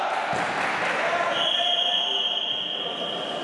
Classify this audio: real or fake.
real